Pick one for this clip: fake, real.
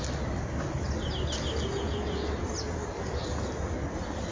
real